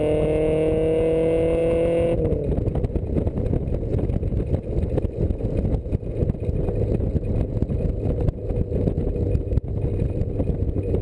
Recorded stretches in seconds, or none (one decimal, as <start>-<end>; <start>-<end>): 0.0-11.0

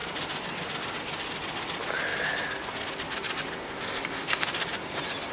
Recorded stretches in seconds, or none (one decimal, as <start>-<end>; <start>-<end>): 0.0-5.3

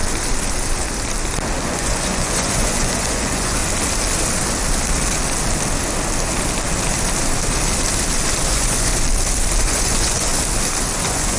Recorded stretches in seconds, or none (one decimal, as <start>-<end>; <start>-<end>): 0.0-1.6; 3.6-8.5; 8.9-9.6; 10.3-11.0

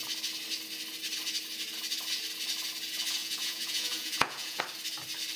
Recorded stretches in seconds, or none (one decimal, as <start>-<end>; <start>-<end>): 0.0-3.2; 4.6-5.4

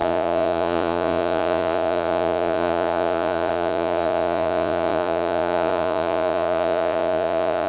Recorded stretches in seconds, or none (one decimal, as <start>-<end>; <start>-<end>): none

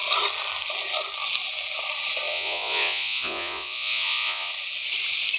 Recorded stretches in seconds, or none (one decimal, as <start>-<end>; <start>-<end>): 0.0-2.3; 4.5-5.4